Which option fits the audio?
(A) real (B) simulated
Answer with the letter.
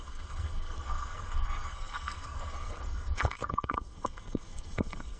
B